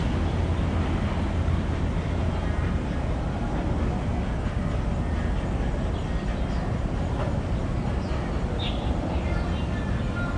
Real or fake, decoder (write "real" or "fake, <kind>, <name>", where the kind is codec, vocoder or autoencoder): real